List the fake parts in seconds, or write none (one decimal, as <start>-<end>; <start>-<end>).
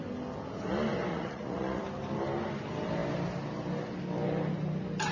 1.1-1.8